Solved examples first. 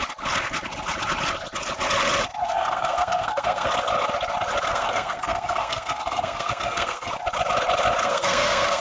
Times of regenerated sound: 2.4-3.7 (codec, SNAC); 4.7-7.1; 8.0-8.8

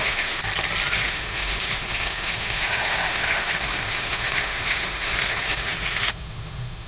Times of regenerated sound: 0.0-0.4 (autoencoder, DAC-VAE); 0.9-6.9

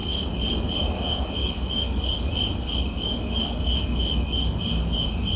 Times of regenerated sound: 0.0-0.6 (codec, DAC); 1.4-4.6

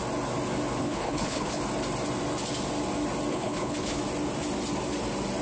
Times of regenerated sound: 0.8-1.6 (codec, HILCodec); 3.3-4.0

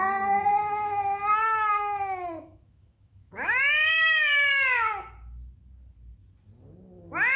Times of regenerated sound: 0.5-3.6 (autoencoder, DAC-VAE)

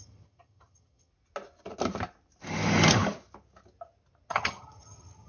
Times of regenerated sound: 0.0-1.1 (vocoder, HiFi-GAN); 4.3-5.3

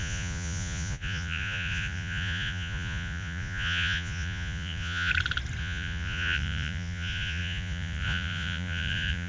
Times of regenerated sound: 0.0-5.1 (vocoder, Vocos); 5.6-9.3